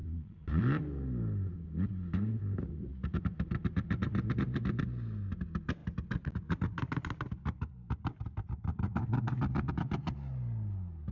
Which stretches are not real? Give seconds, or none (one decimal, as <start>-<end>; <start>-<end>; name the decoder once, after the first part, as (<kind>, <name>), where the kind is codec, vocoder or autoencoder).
0.0-0.6 (vocoder, Vocos)